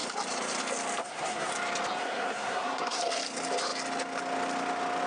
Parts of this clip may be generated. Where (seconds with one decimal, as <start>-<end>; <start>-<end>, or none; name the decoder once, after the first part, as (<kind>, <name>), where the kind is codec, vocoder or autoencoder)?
1.0-1.5 (codec, SNAC); 2.0-3.0